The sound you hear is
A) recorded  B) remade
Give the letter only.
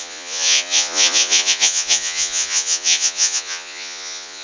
B